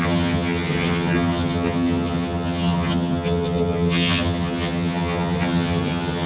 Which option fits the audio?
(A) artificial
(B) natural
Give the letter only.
A